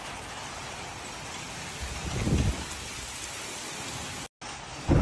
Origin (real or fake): real